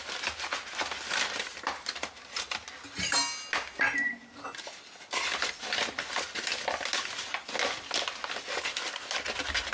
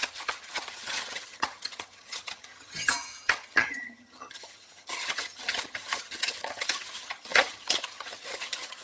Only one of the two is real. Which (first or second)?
first